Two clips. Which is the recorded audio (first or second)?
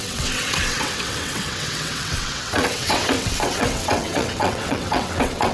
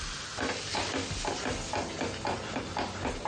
second